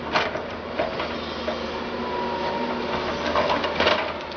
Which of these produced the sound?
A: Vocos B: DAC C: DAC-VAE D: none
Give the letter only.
D